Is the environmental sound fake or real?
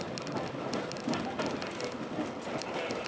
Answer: real